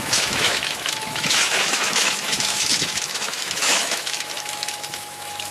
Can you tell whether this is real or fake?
fake